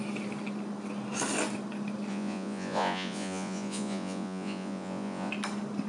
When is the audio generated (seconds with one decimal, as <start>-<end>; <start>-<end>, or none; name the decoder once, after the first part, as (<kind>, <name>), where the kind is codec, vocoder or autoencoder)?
2.1-5.3 (vocoder, Vocos)